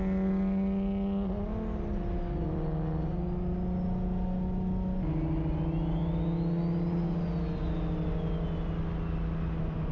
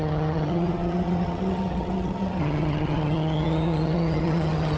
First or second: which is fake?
second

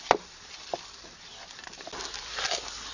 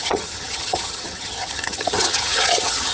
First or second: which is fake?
second